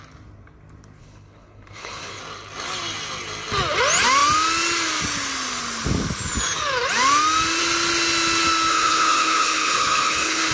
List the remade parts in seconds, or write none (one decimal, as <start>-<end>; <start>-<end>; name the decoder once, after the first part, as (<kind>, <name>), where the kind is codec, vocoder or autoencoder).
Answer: 1.0-2.2 (codec, HILCodec); 8.7-10.5